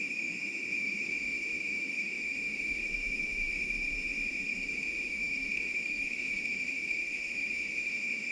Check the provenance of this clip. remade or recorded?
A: remade